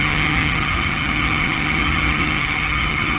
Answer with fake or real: fake